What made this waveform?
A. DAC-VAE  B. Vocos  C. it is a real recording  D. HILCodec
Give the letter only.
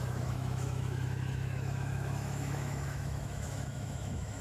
A